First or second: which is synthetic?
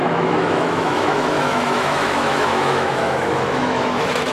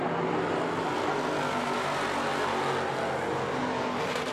first